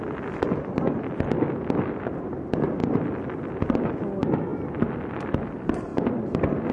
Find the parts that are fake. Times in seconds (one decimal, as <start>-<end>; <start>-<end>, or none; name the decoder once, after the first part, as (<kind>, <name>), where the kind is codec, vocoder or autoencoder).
none